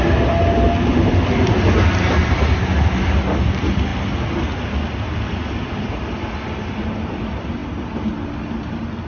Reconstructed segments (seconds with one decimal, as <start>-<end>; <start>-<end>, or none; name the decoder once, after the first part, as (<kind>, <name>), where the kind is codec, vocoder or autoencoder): none